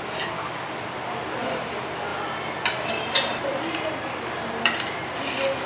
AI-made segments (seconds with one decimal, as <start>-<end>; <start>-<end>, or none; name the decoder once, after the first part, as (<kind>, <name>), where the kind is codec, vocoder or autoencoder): 3.3-5.2 (vocoder, BigVGAN v2)